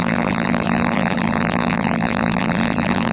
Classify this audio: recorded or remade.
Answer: remade